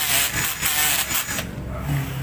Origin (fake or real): real